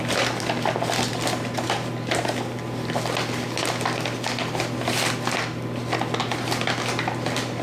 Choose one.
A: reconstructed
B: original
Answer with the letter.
B